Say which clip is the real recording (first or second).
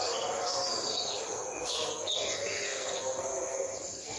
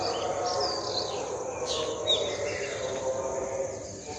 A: second